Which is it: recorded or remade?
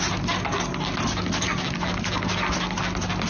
recorded